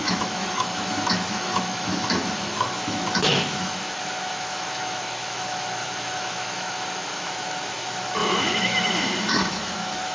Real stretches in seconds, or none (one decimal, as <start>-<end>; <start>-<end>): none